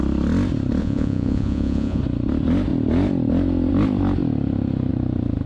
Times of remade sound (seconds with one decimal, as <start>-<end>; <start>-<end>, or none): 0.8-2.0